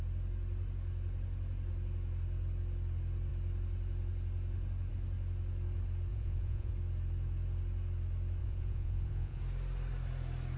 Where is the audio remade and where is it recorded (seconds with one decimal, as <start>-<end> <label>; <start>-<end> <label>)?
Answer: 0.0-6.1 recorded; 6.1-6.7 remade; 6.7-8.4 recorded; 8.4-9.4 remade; 9.4-10.6 recorded